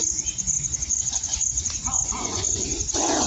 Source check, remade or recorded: remade